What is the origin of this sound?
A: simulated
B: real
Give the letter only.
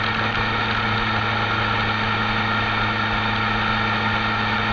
B